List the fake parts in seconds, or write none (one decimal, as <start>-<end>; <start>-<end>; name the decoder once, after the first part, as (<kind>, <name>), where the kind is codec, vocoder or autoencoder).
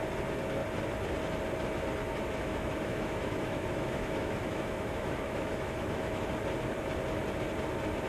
2.5-6.3 (autoencoder, DAC-VAE)